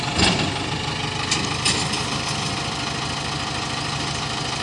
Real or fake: real